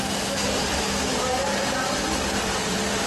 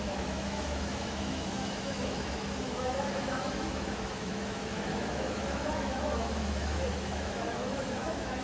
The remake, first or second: second